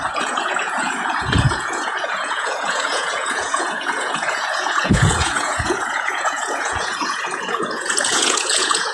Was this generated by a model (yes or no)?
yes